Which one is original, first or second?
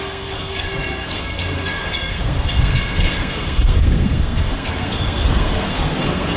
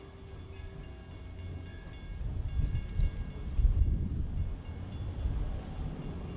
second